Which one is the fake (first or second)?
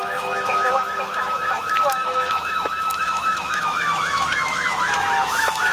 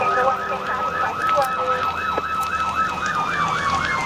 first